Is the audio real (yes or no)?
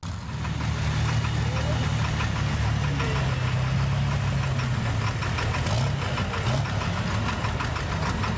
yes